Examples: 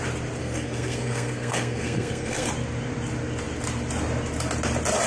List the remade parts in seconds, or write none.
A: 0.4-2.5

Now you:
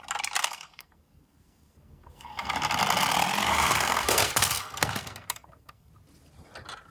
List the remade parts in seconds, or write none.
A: 0.4-2.5; 3.5-5.9